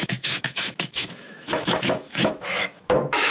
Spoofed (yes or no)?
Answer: yes